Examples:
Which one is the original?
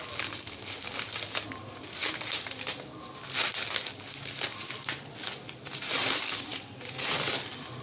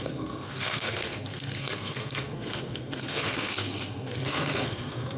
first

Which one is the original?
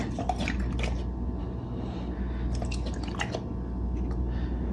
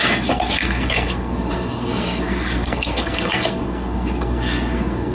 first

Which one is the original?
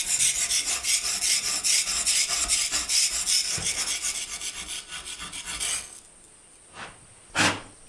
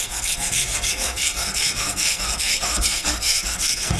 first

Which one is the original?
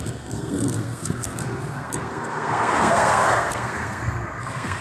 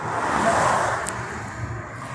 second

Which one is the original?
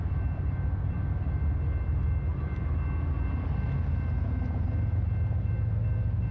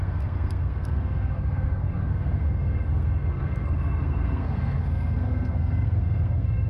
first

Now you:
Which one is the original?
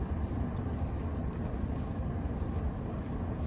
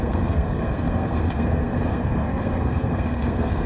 first